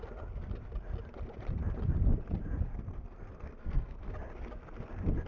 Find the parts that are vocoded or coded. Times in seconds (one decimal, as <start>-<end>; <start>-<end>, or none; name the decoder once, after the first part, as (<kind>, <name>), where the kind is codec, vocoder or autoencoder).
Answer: 2.7-4.1 (codec, SNAC)